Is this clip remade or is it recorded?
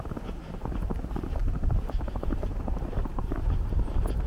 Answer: remade